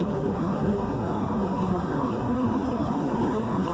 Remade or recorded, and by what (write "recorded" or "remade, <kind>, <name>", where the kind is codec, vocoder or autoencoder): remade, codec, SNAC